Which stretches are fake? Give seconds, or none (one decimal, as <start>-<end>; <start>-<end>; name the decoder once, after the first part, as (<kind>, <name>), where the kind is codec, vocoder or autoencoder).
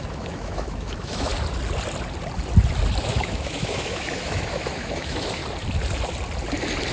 0.0-1.3 (autoencoder, DAC-VAE); 3.0-5.4